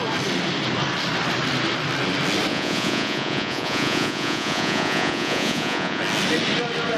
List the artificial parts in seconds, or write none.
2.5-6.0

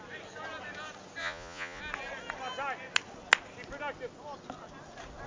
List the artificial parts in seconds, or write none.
1.2-1.8

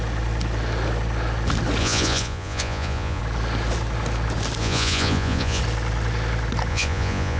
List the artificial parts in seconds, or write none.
1.8-3.2; 4.6-5.6; 6.7-7.4

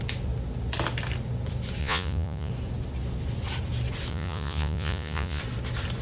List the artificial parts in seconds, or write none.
1.8-2.5; 4.1-5.4

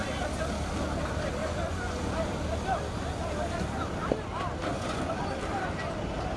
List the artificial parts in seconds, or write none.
1.4-2.0; 4.7-5.3

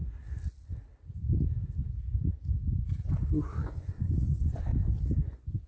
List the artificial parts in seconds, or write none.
3.4-4.7; 5.2-5.7